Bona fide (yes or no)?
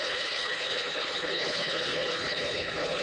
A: no